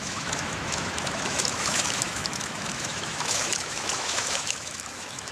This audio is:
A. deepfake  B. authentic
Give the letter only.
A